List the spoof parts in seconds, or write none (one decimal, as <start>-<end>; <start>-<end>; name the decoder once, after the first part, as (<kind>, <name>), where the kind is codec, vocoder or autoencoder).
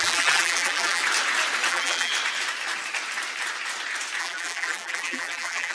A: 0.0-1.0 (vocoder, BigVGAN v2); 1.7-2.1; 4.2-5.7